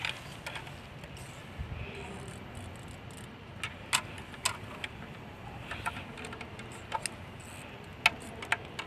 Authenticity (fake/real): real